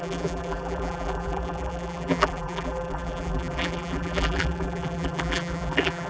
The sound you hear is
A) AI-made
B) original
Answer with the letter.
A